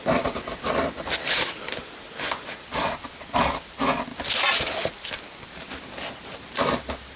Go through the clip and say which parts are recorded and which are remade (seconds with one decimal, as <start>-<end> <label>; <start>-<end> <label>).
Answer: 0.0-7.2 recorded

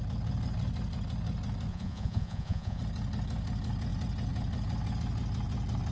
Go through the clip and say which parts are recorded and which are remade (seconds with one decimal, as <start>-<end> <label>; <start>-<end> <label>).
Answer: 0.0-1.7 recorded; 1.7-2.8 remade; 2.8-5.9 recorded

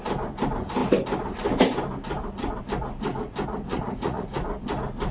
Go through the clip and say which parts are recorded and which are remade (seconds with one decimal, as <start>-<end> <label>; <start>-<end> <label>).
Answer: 0.0-3.7 recorded; 3.7-4.3 remade; 4.3-5.1 recorded

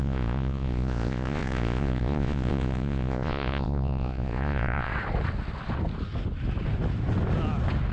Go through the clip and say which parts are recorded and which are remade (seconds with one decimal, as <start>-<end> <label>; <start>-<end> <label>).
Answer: 0.0-4.9 remade; 4.9-7.9 recorded

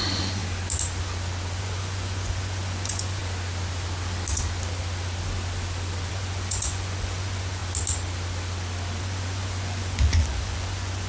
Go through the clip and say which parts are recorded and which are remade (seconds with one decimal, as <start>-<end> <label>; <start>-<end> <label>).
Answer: 0.0-0.4 remade; 0.4-1.6 recorded; 1.6-3.2 remade; 3.2-6.1 recorded; 6.1-7.6 remade; 7.6-9.0 recorded; 9.0-11.1 remade

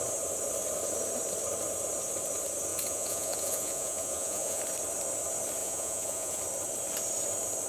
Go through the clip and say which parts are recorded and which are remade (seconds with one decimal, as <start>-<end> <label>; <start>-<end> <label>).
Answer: 0.0-2.7 recorded; 2.7-4.6 remade; 4.6-5.6 recorded; 5.6-6.4 remade; 6.4-7.7 recorded

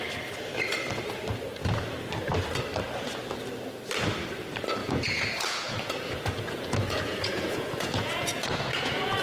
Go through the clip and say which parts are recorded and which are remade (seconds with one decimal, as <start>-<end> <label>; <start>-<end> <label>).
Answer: 0.0-4.8 recorded; 4.8-9.2 remade

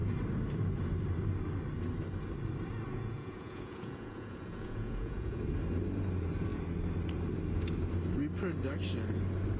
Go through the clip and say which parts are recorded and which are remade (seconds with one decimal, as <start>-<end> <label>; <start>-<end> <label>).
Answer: 0.0-2.9 recorded; 2.9-5.4 remade; 5.4-9.6 recorded